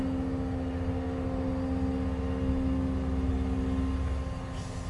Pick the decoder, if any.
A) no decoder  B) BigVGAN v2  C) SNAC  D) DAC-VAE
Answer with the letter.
A